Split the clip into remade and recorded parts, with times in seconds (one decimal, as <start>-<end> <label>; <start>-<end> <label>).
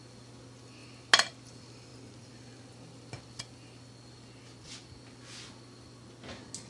0.0-6.7 recorded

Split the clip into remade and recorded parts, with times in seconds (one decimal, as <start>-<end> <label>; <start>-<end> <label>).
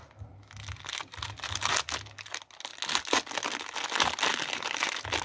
0.0-5.2 recorded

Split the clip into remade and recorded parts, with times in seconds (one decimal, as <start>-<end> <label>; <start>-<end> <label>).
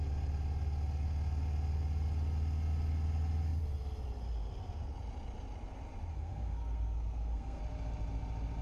0.0-6.1 recorded; 6.1-7.6 remade; 7.6-8.6 recorded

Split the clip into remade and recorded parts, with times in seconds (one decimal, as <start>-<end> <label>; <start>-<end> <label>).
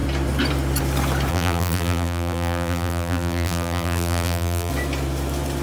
0.0-1.3 recorded; 1.3-4.7 remade; 4.7-5.6 recorded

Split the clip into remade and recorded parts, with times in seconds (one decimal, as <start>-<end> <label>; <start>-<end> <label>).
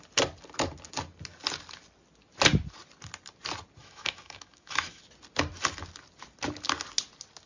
0.0-3.8 recorded; 3.8-5.0 remade; 5.0-7.5 recorded